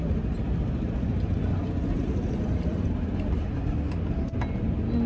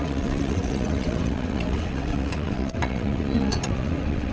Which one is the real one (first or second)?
first